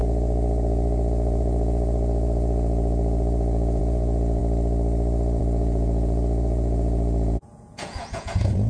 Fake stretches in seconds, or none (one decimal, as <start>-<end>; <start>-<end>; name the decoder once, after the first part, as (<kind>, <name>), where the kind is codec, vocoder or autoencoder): 0.0-4.4 (vocoder, Vocos); 5.4-8.7